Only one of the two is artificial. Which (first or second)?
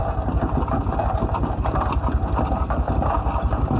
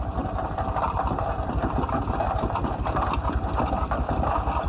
second